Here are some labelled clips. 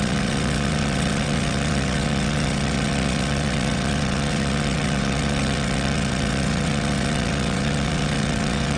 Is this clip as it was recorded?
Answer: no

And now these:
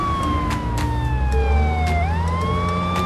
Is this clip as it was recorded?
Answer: yes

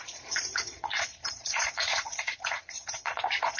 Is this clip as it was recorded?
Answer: no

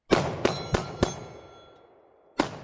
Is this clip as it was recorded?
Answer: yes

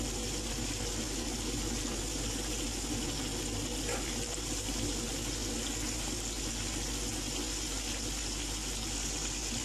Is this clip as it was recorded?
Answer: yes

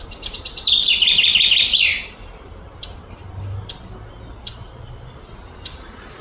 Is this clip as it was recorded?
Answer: yes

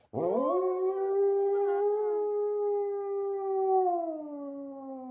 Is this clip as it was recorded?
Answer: yes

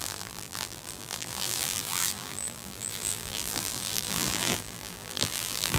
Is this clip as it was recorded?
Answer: no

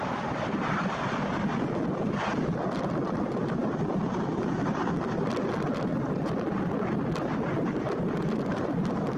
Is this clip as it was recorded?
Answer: yes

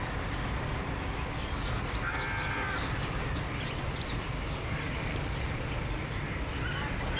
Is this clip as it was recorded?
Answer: yes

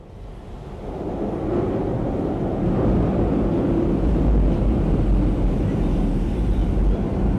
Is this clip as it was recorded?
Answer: yes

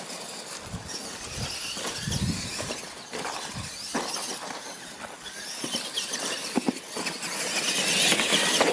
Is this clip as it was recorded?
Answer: yes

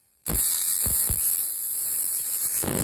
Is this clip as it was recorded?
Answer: no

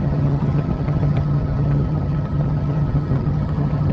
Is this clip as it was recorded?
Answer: no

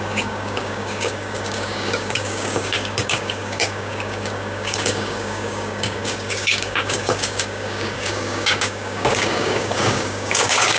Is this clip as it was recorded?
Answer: no